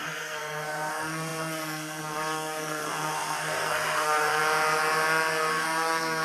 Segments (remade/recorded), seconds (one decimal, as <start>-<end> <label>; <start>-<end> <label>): 0.0-4.4 remade; 4.4-5.5 recorded; 5.5-6.2 remade